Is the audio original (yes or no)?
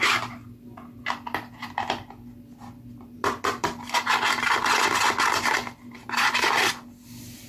yes